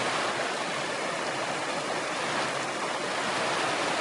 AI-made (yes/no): no